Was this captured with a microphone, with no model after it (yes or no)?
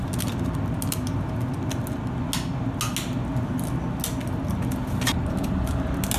yes